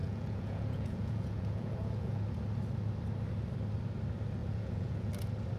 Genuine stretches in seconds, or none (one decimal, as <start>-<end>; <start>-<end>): 2.2-4.4; 5.1-5.6